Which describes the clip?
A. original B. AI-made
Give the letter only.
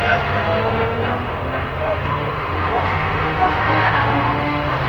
B